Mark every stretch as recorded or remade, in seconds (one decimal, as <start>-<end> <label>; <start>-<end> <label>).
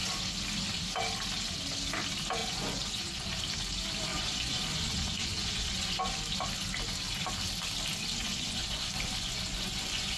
0.0-2.4 recorded; 2.4-3.4 remade; 3.4-4.1 recorded; 4.1-6.0 remade; 6.0-8.2 recorded; 8.2-10.2 remade